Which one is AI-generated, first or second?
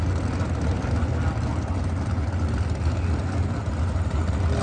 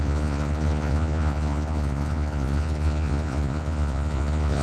second